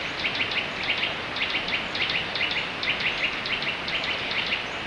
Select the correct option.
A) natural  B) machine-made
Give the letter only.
A